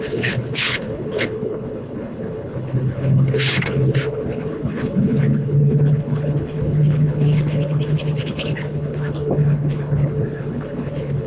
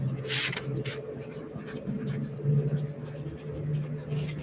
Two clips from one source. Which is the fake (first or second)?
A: first